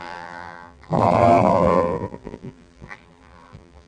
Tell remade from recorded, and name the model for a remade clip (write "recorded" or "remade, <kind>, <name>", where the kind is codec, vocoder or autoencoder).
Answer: remade, vocoder, BigVGAN v2